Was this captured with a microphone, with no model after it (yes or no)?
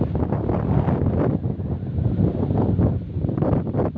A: yes